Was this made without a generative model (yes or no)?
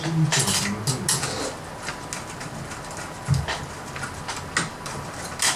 yes